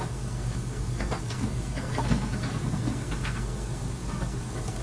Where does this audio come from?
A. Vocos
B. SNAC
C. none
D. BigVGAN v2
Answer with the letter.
B